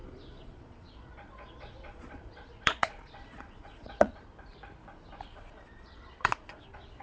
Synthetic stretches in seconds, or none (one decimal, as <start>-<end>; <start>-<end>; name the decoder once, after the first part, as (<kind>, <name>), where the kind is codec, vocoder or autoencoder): 0.0-4.2 (vocoder, Vocos); 5.3-7.0